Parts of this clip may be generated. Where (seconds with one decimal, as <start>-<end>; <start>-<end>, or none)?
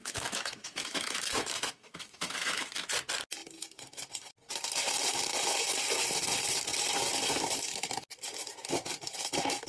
0.0-2.7